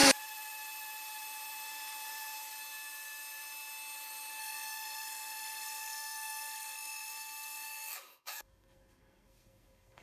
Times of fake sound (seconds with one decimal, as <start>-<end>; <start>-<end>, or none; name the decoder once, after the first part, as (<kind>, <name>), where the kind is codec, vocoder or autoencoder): 4.4-10.0 (codec, SNAC)